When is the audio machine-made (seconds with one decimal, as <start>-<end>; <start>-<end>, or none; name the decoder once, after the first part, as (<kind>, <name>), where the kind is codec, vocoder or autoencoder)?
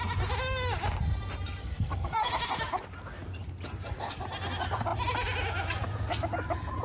1.6-2.3 (codec, SNAC)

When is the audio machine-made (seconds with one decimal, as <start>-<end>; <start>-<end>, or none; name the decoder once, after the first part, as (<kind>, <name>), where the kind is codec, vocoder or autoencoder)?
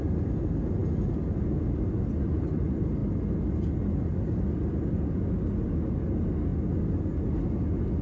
none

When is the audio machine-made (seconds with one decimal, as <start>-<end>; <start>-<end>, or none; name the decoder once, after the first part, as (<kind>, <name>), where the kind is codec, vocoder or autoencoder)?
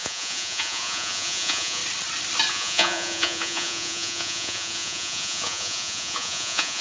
0.0-1.8 (vocoder, Vocos); 2.5-6.8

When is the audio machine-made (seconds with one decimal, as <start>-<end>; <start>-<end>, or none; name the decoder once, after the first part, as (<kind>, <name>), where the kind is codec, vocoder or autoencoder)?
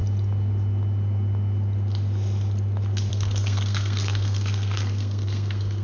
3.1-5.8 (codec, SNAC)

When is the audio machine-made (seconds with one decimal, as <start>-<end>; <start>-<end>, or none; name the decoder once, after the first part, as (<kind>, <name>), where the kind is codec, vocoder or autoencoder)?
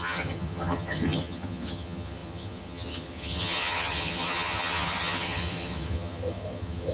0.0-6.9 (vocoder, HiFi-GAN)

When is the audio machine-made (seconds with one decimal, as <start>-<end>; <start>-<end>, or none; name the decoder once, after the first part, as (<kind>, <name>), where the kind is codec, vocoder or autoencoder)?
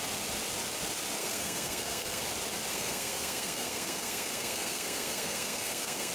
1.2-2.2 (codec, SNAC); 2.7-6.1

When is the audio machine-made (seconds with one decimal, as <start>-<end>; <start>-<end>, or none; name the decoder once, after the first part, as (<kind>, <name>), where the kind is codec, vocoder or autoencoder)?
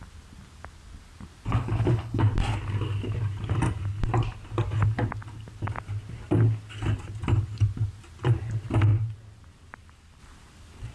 1.5-2.2 (codec, HILCodec)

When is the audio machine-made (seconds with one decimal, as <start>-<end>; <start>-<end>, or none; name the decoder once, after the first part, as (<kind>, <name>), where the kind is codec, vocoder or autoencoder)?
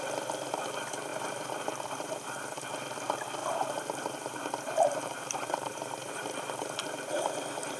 1.1-2.6 (vocoder, BigVGAN v2); 3.4-7.8